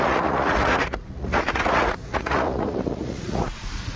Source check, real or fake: fake